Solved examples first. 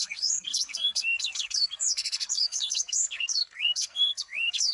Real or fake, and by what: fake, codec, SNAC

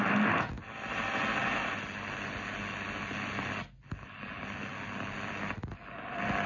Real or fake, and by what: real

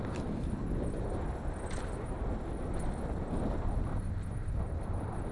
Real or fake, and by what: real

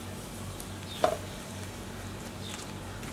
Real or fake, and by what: real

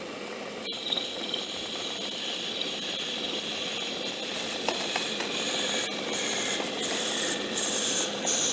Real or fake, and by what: real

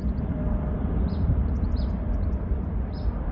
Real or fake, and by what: real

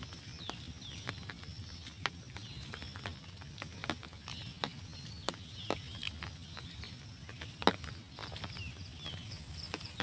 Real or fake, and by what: real